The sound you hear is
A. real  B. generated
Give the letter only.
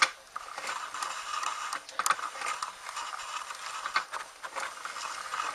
A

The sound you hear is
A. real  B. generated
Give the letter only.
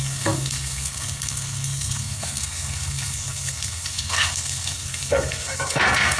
B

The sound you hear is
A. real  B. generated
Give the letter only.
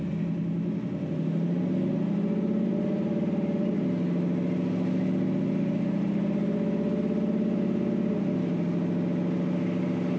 A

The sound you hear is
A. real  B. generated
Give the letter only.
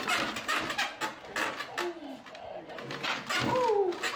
A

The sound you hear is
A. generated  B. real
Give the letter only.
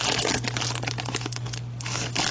B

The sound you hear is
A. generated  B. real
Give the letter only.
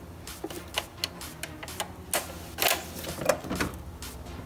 B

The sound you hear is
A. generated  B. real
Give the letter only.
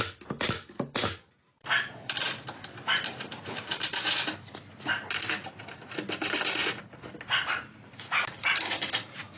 B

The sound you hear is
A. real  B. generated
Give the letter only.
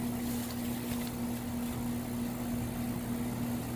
A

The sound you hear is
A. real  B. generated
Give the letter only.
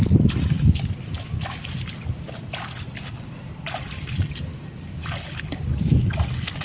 A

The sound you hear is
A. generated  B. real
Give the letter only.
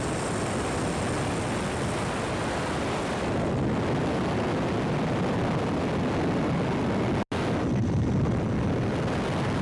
B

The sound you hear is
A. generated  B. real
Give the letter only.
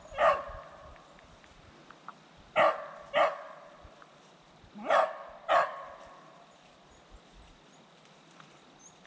B